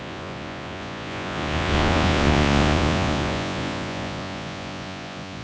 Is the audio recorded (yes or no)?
no